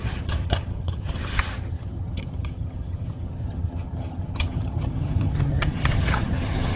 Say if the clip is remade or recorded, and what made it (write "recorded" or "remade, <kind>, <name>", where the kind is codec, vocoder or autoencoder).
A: remade, vocoder, HiFi-GAN